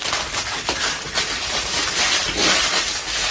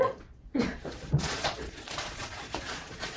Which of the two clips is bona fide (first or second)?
first